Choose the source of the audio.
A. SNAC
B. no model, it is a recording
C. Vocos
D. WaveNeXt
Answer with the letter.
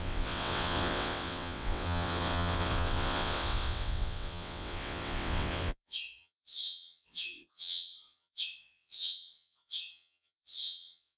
D